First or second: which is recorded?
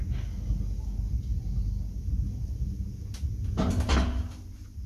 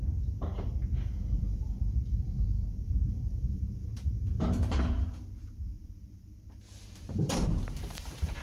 first